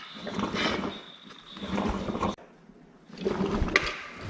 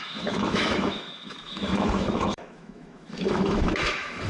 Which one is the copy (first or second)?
second